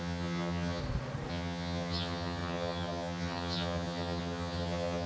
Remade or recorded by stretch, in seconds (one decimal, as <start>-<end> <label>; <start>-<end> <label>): 0.0-0.8 remade; 0.8-1.3 recorded; 1.3-5.1 remade